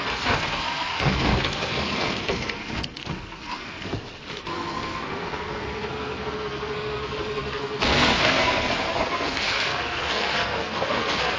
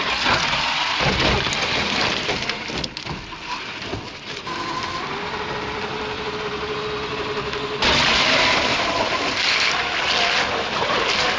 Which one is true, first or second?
second